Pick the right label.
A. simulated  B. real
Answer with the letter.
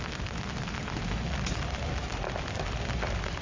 B